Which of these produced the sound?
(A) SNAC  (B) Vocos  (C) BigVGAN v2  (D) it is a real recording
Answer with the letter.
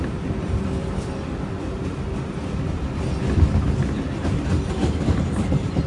D